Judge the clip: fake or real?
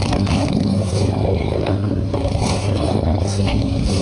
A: fake